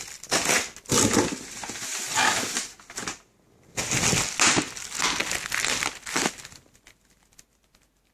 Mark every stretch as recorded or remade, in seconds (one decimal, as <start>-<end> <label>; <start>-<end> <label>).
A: 0.0-8.1 recorded